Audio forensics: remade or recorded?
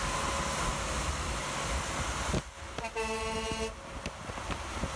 recorded